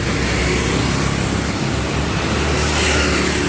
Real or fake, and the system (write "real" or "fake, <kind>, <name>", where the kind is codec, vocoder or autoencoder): real